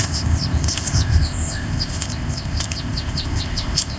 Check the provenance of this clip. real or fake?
fake